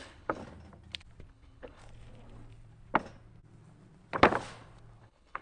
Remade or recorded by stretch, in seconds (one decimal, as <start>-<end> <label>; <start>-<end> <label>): 0.0-0.4 remade; 0.4-1.3 recorded; 1.3-1.8 remade; 1.8-5.0 recorded; 5.0-5.4 remade